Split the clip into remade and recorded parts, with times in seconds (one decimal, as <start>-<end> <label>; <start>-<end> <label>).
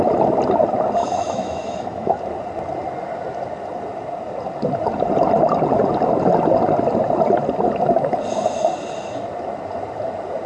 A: 0.0-1.0 recorded; 1.0-2.2 remade; 2.2-10.5 recorded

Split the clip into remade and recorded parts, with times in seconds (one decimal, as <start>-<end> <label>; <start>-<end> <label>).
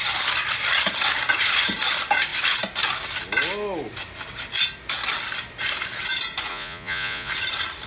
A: 0.0-6.5 recorded; 6.5-7.3 remade; 7.3-7.9 recorded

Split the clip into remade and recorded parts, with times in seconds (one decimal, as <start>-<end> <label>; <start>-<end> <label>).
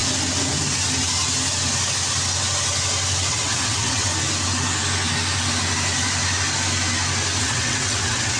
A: 0.0-3.3 recorded; 3.3-4.1 remade; 4.1-7.4 recorded; 7.4-8.4 remade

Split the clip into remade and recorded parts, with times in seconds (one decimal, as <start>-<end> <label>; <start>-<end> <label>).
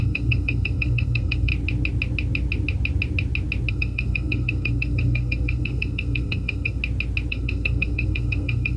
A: 0.0-1.5 remade; 1.5-3.7 recorded; 3.7-6.8 remade; 6.8-7.3 recorded; 7.3-8.8 remade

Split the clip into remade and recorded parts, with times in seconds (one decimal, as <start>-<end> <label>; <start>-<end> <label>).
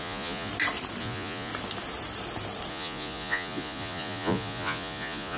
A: 0.0-0.5 remade; 0.5-1.0 recorded; 1.0-1.5 remade; 1.5-2.7 recorded; 2.7-5.4 remade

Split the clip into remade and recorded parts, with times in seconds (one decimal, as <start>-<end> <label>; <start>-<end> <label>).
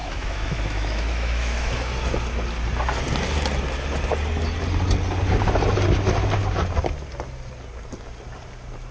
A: 0.0-1.7 remade; 1.7-8.9 recorded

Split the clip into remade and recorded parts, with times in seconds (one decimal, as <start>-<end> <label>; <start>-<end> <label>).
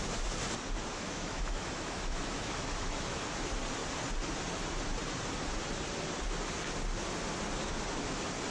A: 0.0-0.9 recorded; 0.9-3.2 remade; 3.2-8.5 recorded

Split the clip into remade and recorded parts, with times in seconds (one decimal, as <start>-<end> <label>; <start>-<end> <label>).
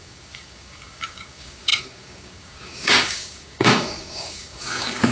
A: 0.0-5.1 remade